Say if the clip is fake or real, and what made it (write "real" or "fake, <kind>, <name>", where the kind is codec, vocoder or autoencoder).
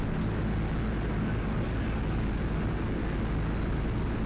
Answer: real